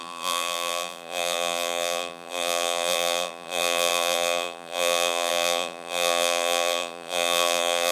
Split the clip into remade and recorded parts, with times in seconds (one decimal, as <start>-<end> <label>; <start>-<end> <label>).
0.0-7.9 remade